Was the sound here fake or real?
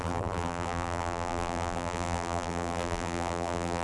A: fake